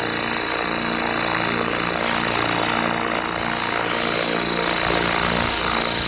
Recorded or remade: recorded